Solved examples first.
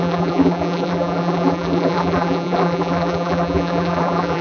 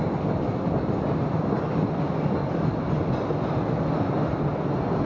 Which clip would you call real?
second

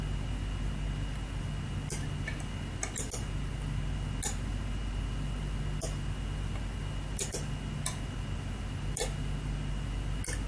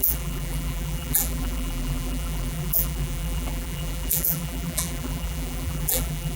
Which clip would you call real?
first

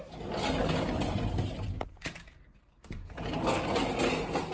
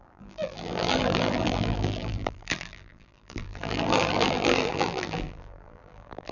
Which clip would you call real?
first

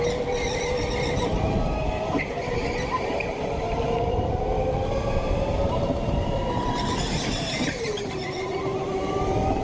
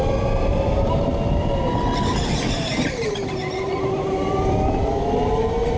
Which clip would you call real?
second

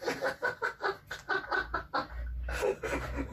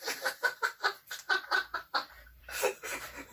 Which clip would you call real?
first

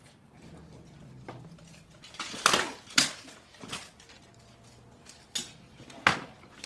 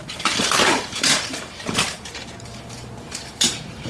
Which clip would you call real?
first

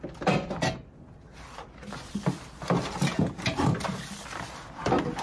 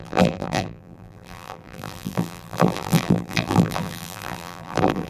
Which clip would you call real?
first